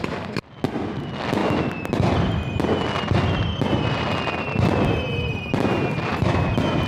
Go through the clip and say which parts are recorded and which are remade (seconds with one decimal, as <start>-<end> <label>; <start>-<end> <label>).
0.0-6.9 recorded